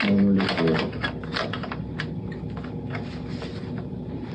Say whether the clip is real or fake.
real